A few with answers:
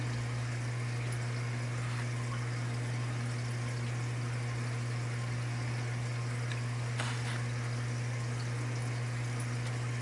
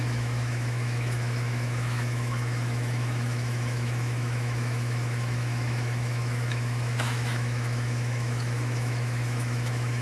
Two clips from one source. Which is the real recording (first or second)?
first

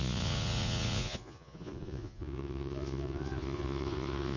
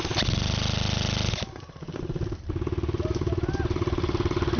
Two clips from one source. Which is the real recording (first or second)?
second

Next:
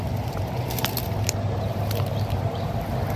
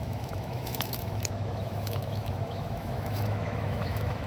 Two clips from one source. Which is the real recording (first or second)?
first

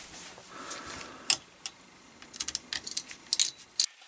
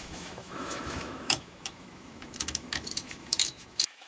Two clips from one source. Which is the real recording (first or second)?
first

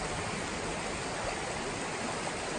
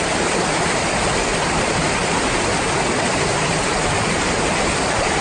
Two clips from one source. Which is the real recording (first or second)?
first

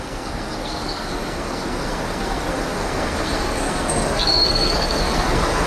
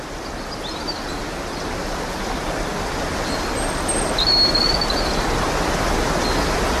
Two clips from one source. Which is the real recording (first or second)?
second